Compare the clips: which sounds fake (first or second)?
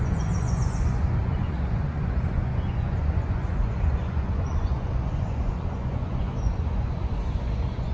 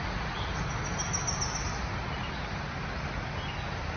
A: first